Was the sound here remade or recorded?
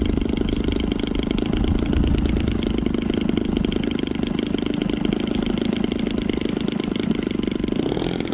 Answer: recorded